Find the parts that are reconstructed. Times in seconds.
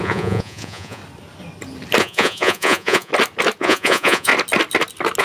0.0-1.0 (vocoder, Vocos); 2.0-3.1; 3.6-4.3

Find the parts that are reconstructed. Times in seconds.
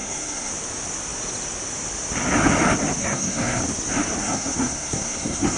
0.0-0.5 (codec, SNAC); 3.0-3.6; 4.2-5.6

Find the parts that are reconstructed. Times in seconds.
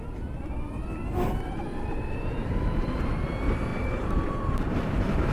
1.7-2.9 (vocoder, BigVGAN v2); 3.7-5.3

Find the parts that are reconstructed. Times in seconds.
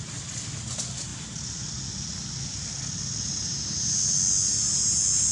none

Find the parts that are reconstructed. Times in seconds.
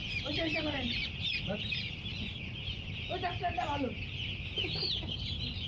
0.0-1.1 (vocoder, Vocos); 2.1-2.9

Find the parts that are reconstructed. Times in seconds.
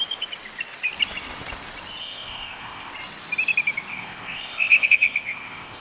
2.0-2.9 (codec, ZipCodec); 3.9-5.8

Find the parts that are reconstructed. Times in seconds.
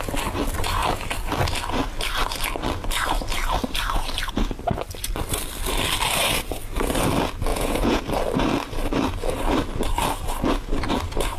7.5-8.0 (vocoder, Vocos)